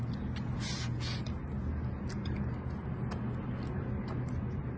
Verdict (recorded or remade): recorded